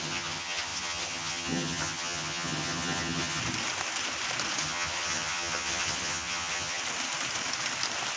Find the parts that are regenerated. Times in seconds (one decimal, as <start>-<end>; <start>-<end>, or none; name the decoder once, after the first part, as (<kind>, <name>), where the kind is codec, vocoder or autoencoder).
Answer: 0.0-3.4 (vocoder, HiFi-GAN); 4.6-6.8

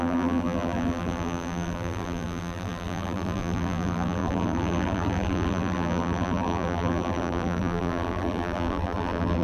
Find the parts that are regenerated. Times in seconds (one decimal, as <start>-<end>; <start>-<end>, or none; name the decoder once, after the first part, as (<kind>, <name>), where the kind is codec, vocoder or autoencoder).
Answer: 0.0-9.4 (vocoder, BigVGAN v2)

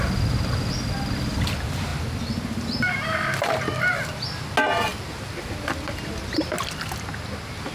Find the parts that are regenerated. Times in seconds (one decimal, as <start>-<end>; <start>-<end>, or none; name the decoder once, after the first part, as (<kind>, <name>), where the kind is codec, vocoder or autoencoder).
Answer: none

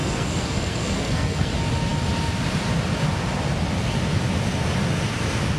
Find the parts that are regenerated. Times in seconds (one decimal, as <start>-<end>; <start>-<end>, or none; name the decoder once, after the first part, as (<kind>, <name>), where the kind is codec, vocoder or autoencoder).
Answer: 0.0-1.5 (codec, SNAC)

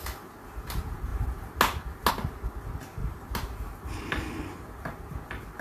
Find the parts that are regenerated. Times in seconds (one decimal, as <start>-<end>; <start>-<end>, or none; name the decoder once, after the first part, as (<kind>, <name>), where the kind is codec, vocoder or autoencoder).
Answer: none